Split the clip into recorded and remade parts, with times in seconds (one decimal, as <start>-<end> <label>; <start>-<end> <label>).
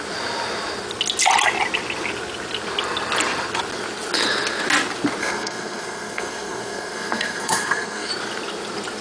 0.0-5.2 recorded; 5.2-8.1 remade; 8.1-9.0 recorded